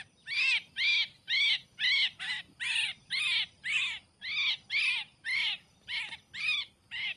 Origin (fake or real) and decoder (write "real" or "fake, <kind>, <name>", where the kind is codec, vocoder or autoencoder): real